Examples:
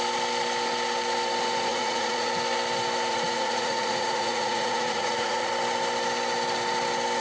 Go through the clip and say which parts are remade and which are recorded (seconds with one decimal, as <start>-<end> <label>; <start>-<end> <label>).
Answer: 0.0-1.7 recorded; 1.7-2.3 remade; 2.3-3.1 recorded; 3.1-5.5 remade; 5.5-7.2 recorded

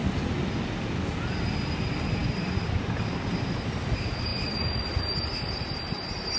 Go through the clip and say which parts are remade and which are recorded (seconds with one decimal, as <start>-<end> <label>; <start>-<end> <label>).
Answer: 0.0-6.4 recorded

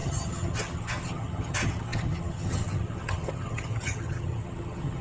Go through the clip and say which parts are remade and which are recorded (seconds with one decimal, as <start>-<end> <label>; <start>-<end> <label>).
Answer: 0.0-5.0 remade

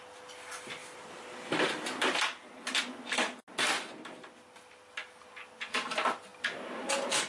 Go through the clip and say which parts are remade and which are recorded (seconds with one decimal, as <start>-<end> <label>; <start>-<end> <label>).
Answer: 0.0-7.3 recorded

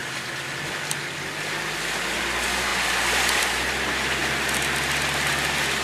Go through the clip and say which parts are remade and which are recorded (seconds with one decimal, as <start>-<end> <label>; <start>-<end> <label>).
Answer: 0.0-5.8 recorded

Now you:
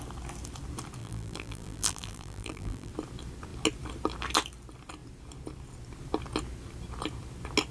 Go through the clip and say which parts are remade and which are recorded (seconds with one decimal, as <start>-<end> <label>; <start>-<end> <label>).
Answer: 0.0-1.0 recorded; 1.0-2.9 remade; 2.9-7.7 recorded